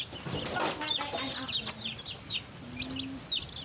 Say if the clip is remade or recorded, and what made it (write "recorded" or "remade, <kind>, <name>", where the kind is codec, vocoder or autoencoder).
recorded